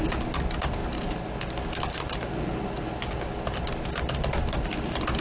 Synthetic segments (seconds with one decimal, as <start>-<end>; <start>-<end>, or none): none